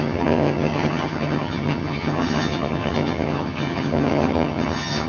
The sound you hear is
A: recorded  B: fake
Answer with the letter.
B